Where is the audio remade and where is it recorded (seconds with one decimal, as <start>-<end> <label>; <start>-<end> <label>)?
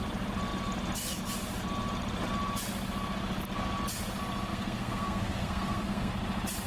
0.0-4.5 recorded; 4.5-6.1 remade; 6.1-6.7 recorded